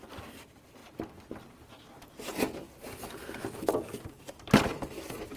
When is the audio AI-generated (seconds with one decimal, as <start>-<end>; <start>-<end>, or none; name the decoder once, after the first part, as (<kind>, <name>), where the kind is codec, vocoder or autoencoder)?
none